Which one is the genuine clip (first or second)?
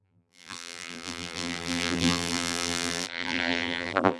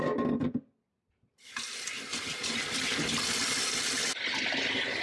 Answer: second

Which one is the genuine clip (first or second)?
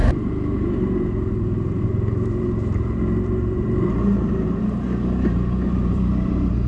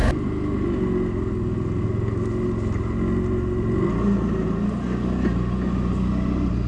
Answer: second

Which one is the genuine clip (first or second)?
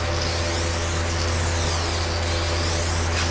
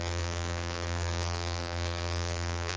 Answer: first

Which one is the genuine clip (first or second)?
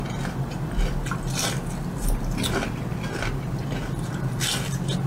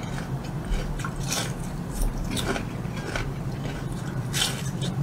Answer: first